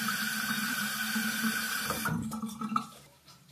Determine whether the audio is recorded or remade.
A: remade